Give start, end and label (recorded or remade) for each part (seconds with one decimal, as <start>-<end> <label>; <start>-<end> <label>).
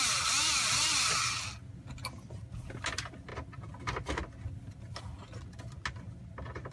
0.0-6.7 recorded